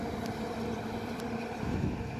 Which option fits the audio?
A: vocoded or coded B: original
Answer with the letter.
B